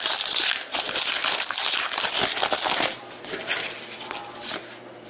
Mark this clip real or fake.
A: real